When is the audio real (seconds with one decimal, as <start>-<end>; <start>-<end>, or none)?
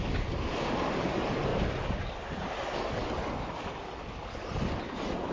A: 1.5-4.7